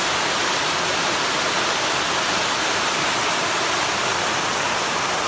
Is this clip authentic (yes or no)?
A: no